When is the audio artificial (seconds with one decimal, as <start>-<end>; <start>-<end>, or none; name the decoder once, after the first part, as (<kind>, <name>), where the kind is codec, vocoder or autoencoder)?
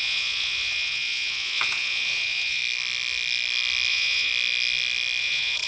0.0-2.6 (vocoder, Vocos); 3.9-4.3; 5.2-5.7